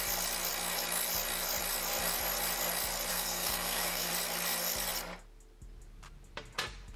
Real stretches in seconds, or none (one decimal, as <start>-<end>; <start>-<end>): 0.0-3.1; 4.1-7.0